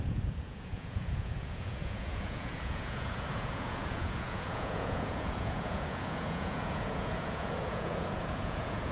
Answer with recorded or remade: remade